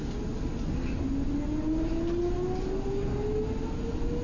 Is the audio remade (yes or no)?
no